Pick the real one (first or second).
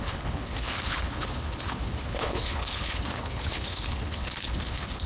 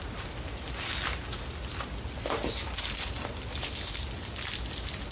second